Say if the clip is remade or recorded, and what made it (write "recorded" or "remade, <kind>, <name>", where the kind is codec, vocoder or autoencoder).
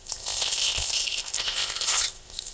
remade, codec, ZipCodec